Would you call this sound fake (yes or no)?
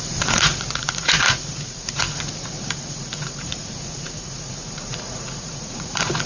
yes